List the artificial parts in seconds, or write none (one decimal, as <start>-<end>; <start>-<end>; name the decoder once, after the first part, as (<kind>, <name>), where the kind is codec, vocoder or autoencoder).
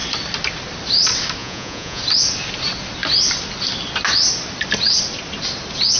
1.4-2.0 (vocoder, Vocos)